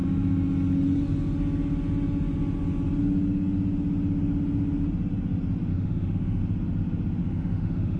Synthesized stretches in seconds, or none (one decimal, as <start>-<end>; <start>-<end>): 5.7-6.4; 7.2-8.0